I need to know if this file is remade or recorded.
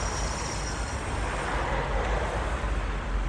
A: recorded